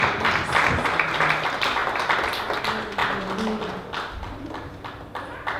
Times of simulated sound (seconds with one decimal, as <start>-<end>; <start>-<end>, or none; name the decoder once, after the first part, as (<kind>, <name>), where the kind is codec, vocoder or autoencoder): 1.8-2.4 (vocoder, BigVGAN v2)